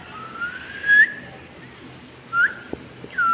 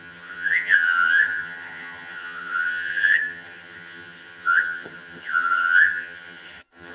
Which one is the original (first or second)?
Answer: first